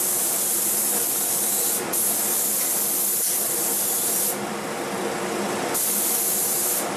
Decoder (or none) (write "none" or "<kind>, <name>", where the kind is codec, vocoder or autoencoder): none